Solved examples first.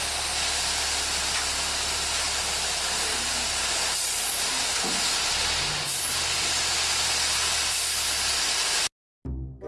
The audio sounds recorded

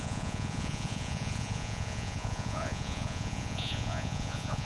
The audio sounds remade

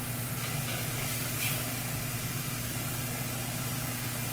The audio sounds recorded